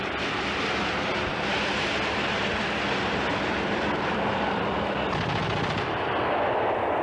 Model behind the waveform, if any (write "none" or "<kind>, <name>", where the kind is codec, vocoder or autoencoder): none